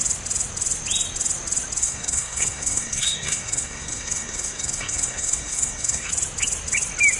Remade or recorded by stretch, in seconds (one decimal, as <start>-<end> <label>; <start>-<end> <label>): 0.0-1.8 recorded; 1.8-6.1 remade; 6.1-7.2 recorded